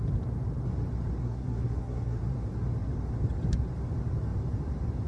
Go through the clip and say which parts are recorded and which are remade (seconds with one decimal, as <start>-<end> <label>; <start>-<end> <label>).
0.0-1.2 recorded; 1.2-2.2 remade; 2.2-5.1 recorded